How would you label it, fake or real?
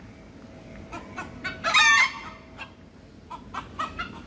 real